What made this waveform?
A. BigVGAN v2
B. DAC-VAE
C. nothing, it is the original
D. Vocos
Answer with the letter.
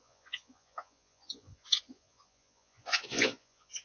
D